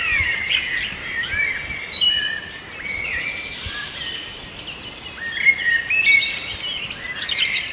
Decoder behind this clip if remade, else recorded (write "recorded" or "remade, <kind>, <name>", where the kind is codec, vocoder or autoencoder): recorded